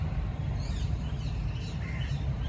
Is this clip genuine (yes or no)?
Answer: yes